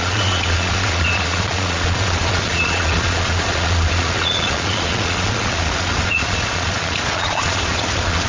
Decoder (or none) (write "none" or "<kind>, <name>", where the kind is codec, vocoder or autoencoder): vocoder, Vocos